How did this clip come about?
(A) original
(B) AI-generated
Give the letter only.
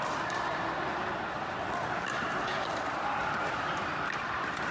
A